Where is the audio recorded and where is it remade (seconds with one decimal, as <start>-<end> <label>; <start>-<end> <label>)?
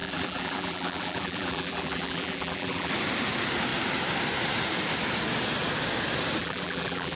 0.0-2.9 remade; 2.9-6.4 recorded; 6.4-7.2 remade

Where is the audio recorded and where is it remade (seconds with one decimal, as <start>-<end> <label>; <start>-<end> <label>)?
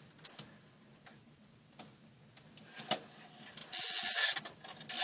0.0-5.0 recorded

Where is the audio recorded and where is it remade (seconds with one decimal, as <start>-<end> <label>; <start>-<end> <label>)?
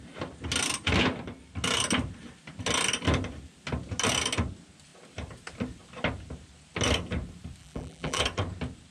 0.0-7.6 recorded; 7.6-8.2 remade; 8.2-8.9 recorded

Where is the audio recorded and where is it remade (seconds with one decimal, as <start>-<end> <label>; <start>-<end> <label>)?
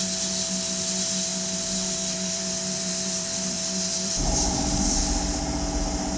0.0-1.3 recorded; 1.3-5.0 remade; 5.0-6.2 recorded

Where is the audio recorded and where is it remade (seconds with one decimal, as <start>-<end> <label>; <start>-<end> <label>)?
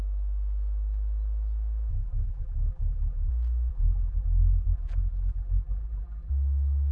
0.0-1.9 recorded; 1.9-3.3 remade; 3.3-3.7 recorded; 3.7-6.3 remade; 6.3-6.9 recorded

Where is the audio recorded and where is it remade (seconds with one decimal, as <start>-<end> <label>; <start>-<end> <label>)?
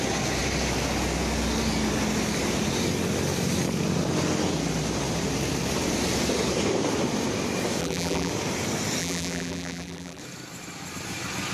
0.0-7.8 recorded; 7.8-8.3 remade; 8.3-9.0 recorded; 9.0-10.2 remade; 10.2-11.5 recorded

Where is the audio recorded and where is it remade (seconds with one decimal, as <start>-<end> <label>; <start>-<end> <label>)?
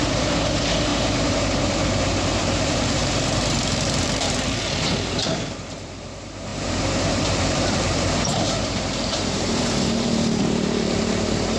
0.0-11.6 remade